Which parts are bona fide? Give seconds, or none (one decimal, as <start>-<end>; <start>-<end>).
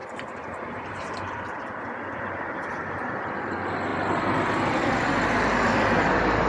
3.5-6.5